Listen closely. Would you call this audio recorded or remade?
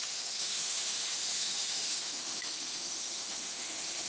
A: remade